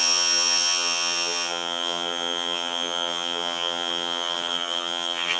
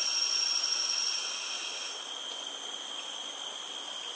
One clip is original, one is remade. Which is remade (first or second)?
first